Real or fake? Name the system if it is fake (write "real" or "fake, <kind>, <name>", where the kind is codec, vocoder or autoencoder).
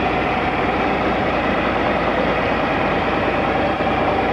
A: fake, vocoder, BigVGAN v2